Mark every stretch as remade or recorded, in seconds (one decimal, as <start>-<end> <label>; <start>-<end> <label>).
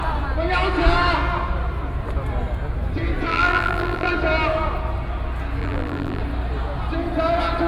0.0-3.3 recorded; 3.3-4.1 remade; 4.1-5.6 recorded; 5.6-6.2 remade; 6.2-7.7 recorded